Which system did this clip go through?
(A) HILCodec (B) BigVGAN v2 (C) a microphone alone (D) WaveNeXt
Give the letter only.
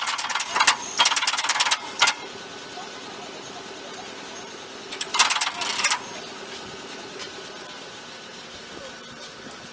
C